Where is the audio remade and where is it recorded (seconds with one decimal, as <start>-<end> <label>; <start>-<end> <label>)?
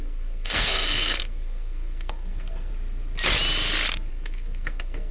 0.0-2.7 remade; 2.7-4.1 recorded; 4.1-5.1 remade